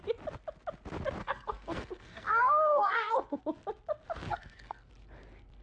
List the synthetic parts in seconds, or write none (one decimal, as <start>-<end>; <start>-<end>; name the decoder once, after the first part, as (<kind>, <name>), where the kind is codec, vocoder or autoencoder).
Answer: 1.2-3.4 (codec, SNAC); 4.3-4.9